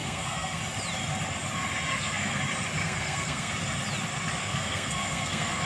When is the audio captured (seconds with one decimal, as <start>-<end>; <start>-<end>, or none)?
0.6-1.9; 2.4-2.8; 3.5-4.4